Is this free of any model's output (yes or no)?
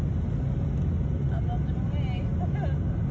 yes